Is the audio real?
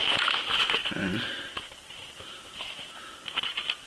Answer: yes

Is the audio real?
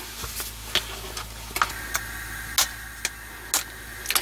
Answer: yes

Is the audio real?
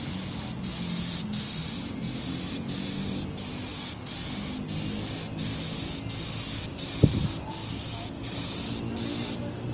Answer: yes